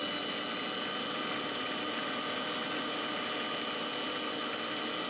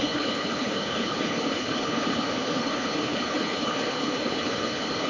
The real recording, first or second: first